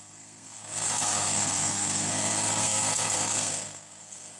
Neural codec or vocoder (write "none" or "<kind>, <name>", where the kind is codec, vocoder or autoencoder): codec, SNAC